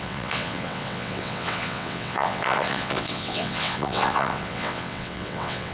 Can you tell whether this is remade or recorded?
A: remade